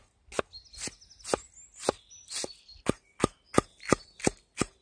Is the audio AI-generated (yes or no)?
no